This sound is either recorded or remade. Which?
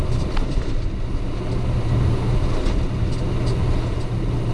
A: recorded